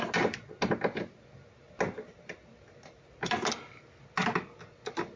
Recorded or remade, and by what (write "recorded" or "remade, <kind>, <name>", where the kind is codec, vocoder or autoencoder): recorded